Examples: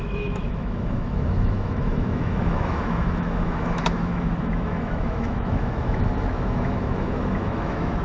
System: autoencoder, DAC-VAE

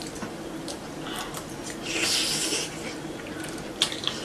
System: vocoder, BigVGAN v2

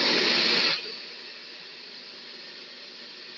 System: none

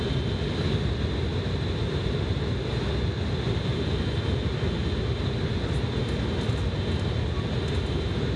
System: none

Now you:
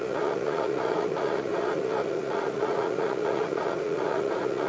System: vocoder, Vocos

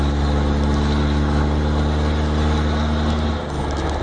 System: none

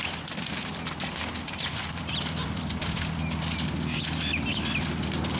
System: vocoder, BigVGAN v2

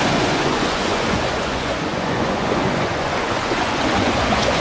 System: vocoder, Vocos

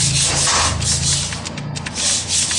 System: none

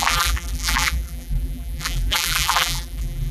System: vocoder, BigVGAN v2